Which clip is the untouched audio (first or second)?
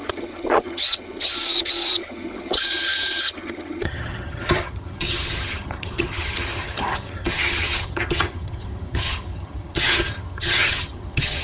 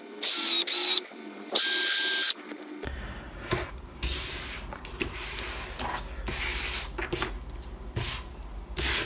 second